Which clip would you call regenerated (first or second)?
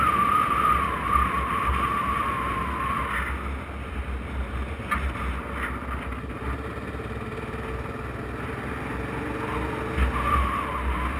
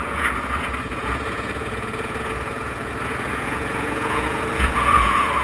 second